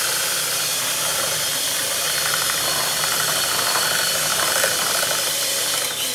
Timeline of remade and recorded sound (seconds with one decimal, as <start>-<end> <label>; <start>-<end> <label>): 0.0-1.1 remade; 1.1-3.0 recorded; 3.0-6.1 remade